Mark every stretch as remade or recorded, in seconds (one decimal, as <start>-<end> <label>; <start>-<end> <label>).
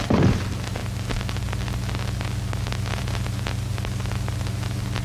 0.0-5.0 recorded